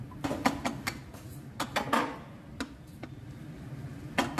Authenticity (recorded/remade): recorded